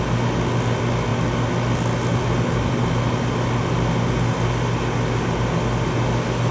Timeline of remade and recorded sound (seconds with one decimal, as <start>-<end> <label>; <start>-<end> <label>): 0.0-6.5 recorded